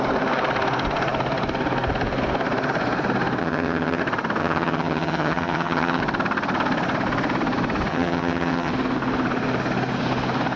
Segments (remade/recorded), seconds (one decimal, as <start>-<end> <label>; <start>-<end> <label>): 0.0-3.4 recorded; 3.4-4.0 remade; 4.0-4.4 recorded; 4.4-6.0 remade; 6.0-7.9 recorded; 7.9-8.7 remade; 8.7-10.6 recorded